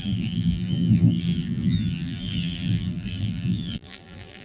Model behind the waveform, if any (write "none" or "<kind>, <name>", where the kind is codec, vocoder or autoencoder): vocoder, BigVGAN v2